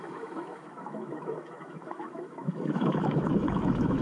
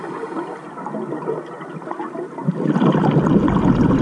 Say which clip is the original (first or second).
second